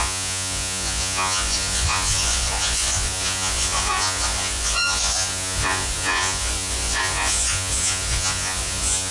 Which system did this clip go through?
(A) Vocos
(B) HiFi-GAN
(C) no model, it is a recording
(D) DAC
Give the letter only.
A